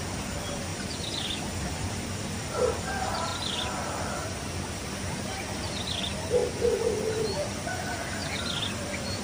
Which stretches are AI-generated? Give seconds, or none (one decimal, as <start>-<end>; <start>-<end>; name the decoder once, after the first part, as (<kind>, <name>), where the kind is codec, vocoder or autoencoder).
0.0-0.7 (vocoder, BigVGAN v2); 1.4-3.3; 4.9-8.2